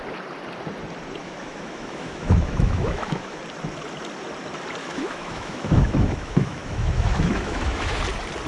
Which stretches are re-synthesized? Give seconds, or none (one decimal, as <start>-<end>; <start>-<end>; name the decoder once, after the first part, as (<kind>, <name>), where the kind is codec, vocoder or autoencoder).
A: 1.2-3.4 (autoencoder, DAC-VAE); 4.8-8.0